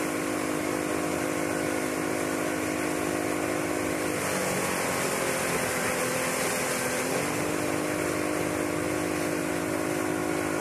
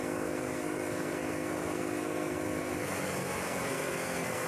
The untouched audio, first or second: first